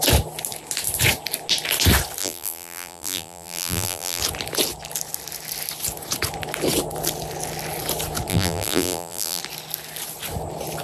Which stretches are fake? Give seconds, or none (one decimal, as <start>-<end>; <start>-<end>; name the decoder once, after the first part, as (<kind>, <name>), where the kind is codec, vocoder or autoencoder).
2.2-4.2 (vocoder, BigVGAN v2); 8.3-9.4